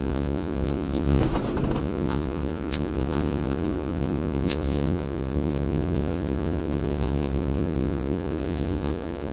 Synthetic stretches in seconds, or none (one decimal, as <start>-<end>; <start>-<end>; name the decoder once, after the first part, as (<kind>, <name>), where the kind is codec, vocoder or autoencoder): 0.0-1.2 (vocoder, Vocos); 1.8-9.3